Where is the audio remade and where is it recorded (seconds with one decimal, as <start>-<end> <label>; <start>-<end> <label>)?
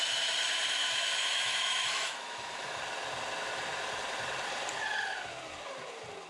0.0-0.8 recorded; 0.8-2.8 remade; 2.8-6.3 recorded